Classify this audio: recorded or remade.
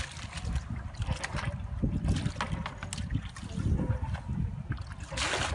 recorded